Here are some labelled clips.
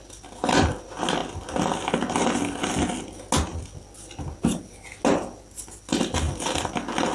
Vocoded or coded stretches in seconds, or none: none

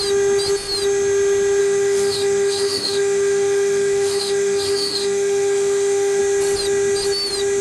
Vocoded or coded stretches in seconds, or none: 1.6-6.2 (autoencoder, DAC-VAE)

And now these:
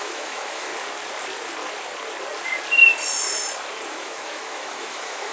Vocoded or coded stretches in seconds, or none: 0.0-0.7 (autoencoder, DAC-VAE); 3.9-5.3

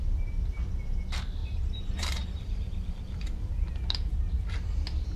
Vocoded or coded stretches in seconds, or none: 1.4-3.7 (vocoder, BigVGAN v2)

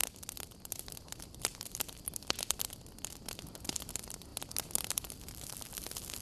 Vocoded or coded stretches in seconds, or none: 0.8-4.3 (vocoder, BigVGAN v2); 4.9-6.2

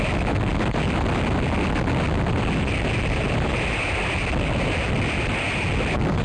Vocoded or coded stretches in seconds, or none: none